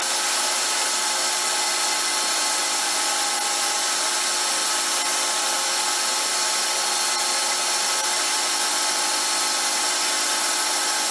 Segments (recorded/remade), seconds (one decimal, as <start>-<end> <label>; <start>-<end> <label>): 0.0-11.1 recorded